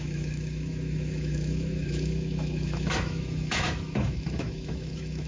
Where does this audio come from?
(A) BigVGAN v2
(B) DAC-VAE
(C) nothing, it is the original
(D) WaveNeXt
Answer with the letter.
B